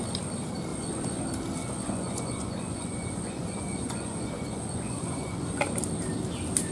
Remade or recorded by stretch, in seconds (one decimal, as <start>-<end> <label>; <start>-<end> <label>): 0.0-0.7 recorded; 0.7-1.2 remade; 1.2-1.6 recorded; 1.6-5.6 remade; 5.6-6.7 recorded